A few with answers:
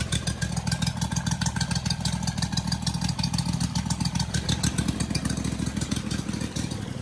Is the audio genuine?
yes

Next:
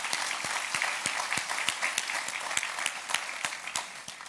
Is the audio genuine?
yes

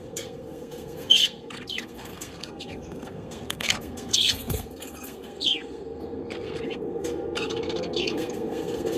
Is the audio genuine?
no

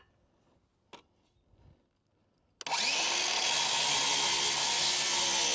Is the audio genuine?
yes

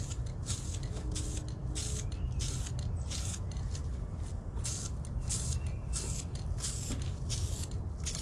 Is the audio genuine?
yes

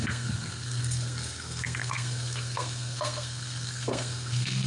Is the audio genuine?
no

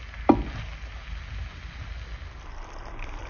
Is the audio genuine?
yes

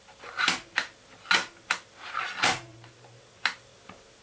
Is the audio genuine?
yes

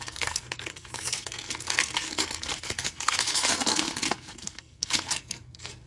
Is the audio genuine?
no